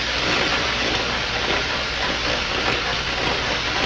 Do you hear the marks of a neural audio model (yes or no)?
yes